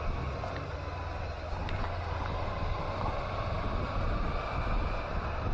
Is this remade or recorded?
recorded